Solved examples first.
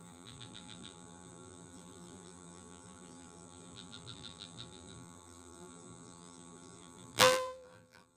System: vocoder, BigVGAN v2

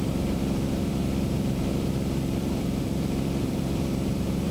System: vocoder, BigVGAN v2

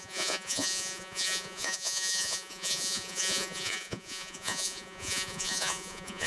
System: vocoder, Vocos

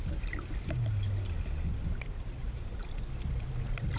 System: none